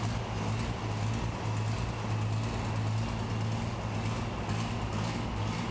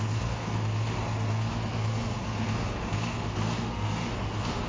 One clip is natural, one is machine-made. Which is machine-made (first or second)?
second